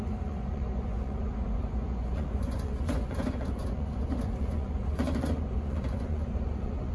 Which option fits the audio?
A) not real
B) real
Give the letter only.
A